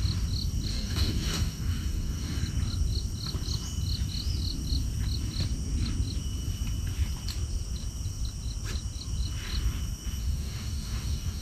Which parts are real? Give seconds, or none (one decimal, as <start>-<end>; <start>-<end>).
0.0-0.7; 2.4-10.2